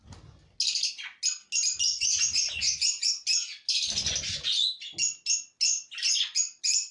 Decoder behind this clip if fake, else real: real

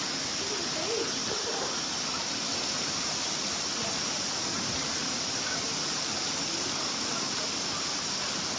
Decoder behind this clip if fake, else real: real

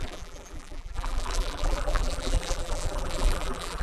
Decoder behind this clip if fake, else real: fake, vocoder, BigVGAN v2